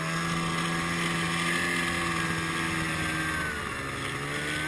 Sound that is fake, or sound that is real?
real